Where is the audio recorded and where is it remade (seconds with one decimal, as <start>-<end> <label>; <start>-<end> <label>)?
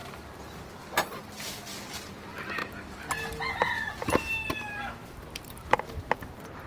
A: 0.0-2.6 remade; 2.6-3.5 recorded; 3.5-6.7 remade